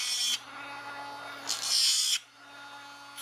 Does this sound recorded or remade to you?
recorded